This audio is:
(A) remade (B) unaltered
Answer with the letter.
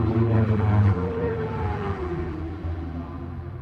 A